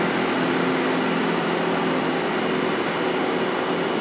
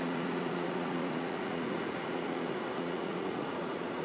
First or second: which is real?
first